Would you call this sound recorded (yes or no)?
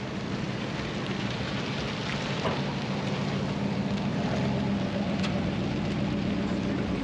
yes